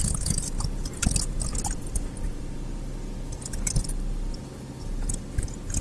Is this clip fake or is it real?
fake